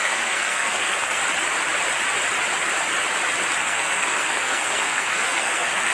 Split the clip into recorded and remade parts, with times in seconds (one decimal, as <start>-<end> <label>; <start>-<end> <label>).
0.0-1.2 remade; 1.2-3.6 recorded; 3.6-5.9 remade